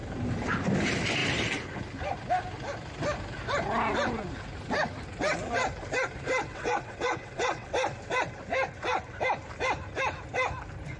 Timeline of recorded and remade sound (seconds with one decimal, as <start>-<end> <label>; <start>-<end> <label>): 0.0-6.5 recorded; 6.5-7.7 remade; 7.7-11.0 recorded